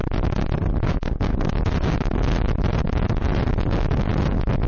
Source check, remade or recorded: recorded